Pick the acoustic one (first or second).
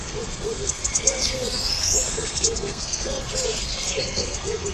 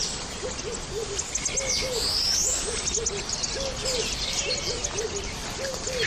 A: second